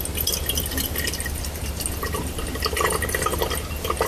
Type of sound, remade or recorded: recorded